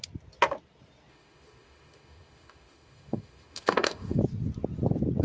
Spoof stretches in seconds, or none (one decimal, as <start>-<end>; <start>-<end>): 1.1-4.2